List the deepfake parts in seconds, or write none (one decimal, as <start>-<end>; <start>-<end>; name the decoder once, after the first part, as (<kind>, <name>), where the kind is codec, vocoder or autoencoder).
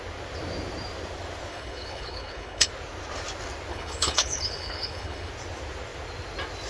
1.5-2.7 (codec, HILCodec); 3.7-5.3